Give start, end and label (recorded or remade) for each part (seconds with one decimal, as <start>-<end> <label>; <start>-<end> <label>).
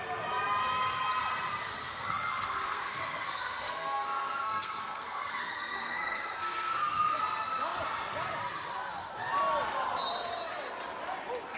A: 0.0-1.9 recorded; 1.9-7.2 remade; 7.2-11.6 recorded